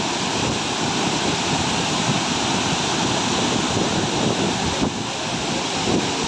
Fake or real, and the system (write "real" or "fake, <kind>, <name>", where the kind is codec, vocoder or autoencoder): real